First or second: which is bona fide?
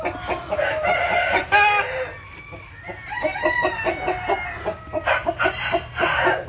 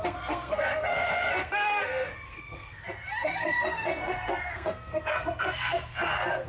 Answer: first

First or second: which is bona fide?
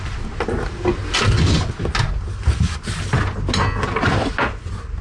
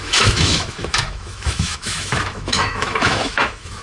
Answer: first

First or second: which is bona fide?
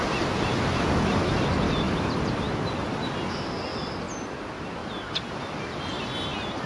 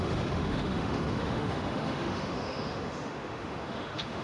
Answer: first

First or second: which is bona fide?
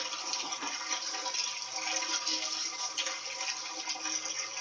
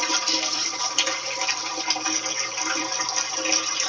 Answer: first